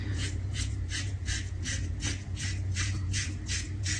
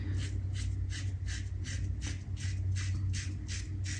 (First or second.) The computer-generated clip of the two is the first